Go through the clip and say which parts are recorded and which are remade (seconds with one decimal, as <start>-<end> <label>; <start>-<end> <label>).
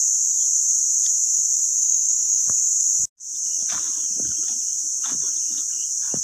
0.0-1.7 recorded; 1.7-2.5 remade; 2.5-6.2 recorded